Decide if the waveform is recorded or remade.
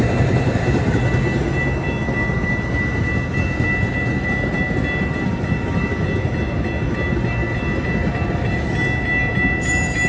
recorded